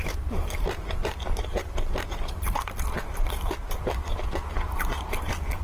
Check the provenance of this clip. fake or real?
fake